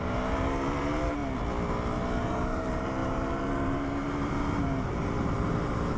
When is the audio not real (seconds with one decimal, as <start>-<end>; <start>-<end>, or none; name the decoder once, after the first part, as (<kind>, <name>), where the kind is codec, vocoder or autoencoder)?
0.0-1.2 (vocoder, BigVGAN v2); 2.2-6.0